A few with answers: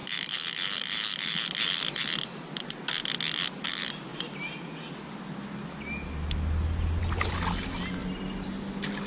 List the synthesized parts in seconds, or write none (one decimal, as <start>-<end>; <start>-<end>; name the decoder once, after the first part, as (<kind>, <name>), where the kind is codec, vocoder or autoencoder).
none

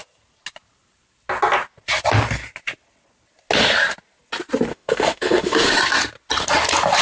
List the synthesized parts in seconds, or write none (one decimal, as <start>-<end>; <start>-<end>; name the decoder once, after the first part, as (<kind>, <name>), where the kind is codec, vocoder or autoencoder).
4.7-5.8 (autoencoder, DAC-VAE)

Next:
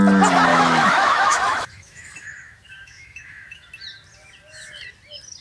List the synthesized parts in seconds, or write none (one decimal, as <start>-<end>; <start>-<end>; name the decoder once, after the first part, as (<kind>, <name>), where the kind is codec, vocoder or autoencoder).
0.5-3.7 (autoencoder, DAC-VAE)

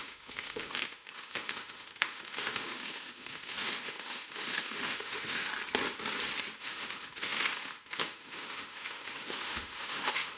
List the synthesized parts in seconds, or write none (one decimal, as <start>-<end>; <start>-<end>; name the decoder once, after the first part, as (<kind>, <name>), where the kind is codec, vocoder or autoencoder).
0.0-5.5 (autoencoder, DAC-VAE); 6.6-10.4

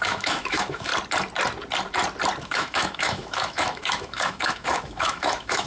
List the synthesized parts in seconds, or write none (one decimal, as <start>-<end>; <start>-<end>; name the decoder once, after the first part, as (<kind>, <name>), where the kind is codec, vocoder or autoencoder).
0.0-0.9 (autoencoder, DAC-VAE); 2.4-5.7

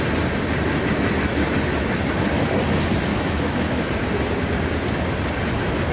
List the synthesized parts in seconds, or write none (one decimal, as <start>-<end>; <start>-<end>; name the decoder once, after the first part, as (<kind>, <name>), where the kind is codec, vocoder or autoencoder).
3.1-4.0 (autoencoder, DAC-VAE)

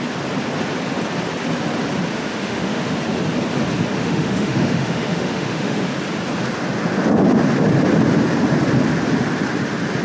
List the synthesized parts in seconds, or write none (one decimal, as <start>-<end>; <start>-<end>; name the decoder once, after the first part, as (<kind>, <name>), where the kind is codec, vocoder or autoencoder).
2.1-2.9 (autoencoder, DAC-VAE); 4.0-5.8

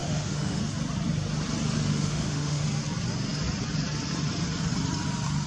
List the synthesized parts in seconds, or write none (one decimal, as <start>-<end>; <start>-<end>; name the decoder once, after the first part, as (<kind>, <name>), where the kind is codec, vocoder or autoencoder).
0.0-0.6 (autoencoder, DAC-VAE); 1.9-2.6